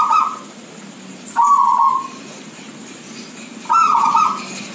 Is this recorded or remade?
recorded